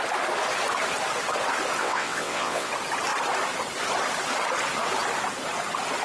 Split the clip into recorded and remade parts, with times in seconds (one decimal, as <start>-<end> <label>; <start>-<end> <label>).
0.0-1.8 recorded; 1.8-2.7 remade; 2.7-6.0 recorded